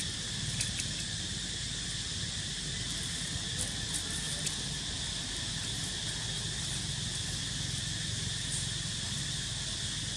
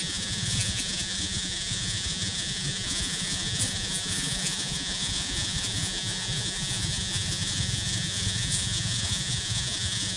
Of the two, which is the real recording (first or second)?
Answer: first